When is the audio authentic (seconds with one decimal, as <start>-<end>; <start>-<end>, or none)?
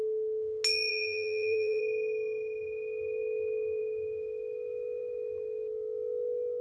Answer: 0.0-0.9; 1.8-6.6